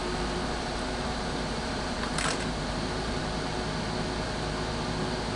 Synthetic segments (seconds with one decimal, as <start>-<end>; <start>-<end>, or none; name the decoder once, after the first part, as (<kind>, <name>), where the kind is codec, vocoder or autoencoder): 0.0-3.2 (vocoder, BigVGAN v2)

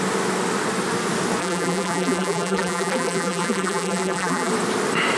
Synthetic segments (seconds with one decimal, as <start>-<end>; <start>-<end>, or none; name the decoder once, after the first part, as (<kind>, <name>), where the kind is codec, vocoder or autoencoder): 1.4-4.5 (vocoder, BigVGAN v2)

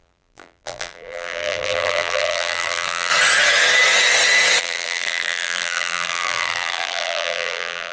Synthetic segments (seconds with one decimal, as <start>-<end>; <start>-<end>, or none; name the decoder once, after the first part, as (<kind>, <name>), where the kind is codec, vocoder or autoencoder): 0.0-3.1 (vocoder, BigVGAN v2); 4.6-7.9

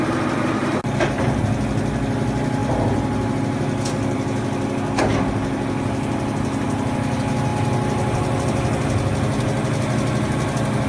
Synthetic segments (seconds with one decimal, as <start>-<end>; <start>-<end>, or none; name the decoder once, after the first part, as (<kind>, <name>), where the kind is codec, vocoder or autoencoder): 0.6-1.4 (vocoder, BigVGAN v2)

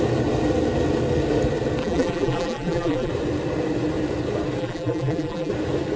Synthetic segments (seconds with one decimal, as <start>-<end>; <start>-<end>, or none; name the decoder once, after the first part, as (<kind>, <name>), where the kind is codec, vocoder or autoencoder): 1.8-3.1 (vocoder, BigVGAN v2); 4.6-5.5

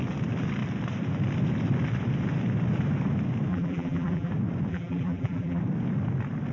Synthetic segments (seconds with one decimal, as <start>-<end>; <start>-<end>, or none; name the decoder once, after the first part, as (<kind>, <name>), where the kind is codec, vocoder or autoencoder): 3.5-4.3 (vocoder, BigVGAN v2); 4.7-5.6

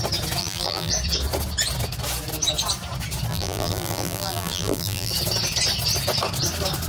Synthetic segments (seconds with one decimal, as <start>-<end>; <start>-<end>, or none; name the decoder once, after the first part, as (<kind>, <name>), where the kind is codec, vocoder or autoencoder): 0.4-0.9 (vocoder, BigVGAN v2); 3.3-5.1